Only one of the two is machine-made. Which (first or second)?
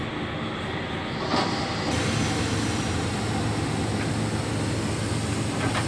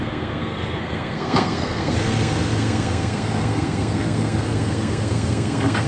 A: second